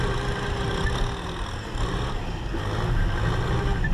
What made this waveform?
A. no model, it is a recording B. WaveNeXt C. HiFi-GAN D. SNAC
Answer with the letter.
A